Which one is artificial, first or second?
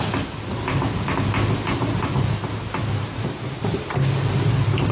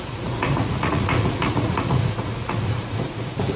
second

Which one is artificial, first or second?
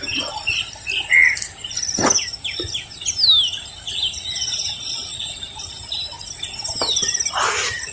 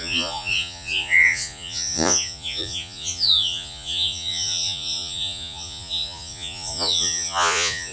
second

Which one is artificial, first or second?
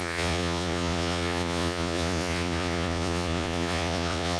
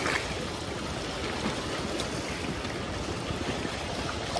first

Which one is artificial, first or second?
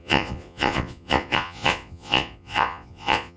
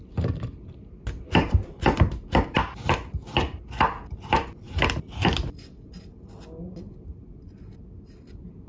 first